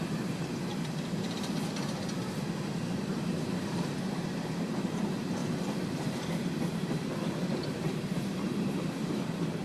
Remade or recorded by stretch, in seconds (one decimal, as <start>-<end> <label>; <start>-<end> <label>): 0.0-5.4 remade; 5.4-6.7 recorded; 6.7-9.6 remade